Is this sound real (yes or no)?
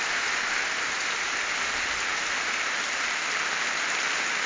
yes